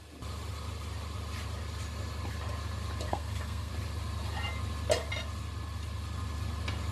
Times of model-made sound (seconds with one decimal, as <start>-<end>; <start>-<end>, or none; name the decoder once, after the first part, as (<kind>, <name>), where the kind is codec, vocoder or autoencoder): 3.1-3.7 (codec, SNAC)